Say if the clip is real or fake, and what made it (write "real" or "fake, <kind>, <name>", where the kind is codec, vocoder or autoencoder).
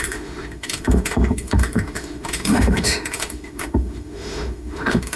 fake, autoencoder, DAC-VAE